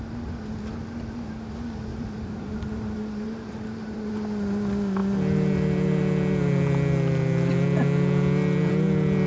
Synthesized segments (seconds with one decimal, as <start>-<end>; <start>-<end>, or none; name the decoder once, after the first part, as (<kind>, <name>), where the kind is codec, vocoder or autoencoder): 1.9-4.1 (vocoder, BigVGAN v2)

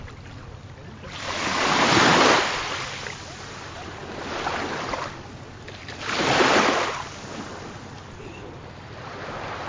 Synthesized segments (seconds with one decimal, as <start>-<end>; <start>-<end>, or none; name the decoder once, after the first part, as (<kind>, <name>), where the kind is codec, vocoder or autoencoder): none

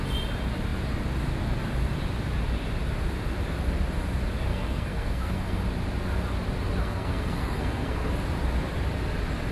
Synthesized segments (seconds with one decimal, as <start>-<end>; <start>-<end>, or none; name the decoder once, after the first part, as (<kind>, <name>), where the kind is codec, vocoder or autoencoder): 4.5-5.6 (codec, SNAC); 6.8-8.1

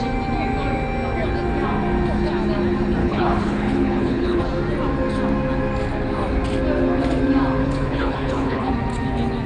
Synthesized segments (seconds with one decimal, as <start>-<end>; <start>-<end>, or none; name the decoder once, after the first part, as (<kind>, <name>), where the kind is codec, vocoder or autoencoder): 3.0-4.4 (codec, HILCodec); 7.6-8.7

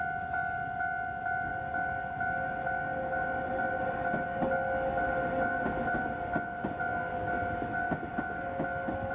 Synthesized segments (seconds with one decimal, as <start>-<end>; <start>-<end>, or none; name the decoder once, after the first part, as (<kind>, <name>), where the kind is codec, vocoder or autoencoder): none